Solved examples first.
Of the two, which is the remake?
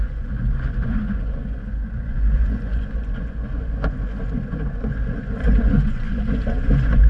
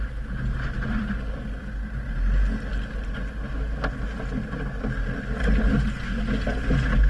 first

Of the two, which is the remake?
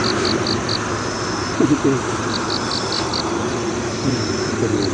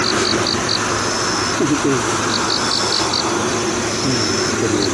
first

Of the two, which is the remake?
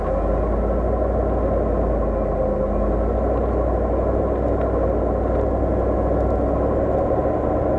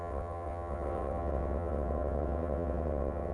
second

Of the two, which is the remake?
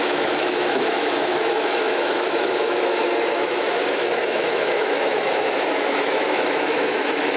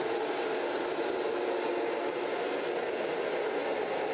first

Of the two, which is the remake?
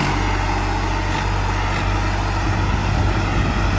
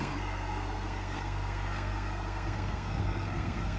second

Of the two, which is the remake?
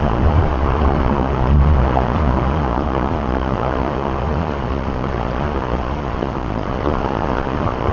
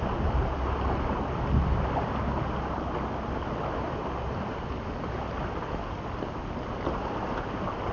first